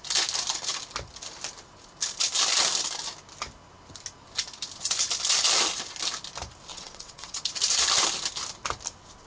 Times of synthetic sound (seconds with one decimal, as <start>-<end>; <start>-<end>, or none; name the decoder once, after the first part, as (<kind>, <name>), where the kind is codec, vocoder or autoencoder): 6.7-7.4 (vocoder, WaveNeXt)